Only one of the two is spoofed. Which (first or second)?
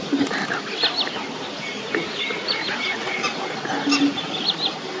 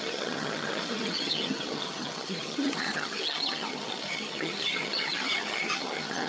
second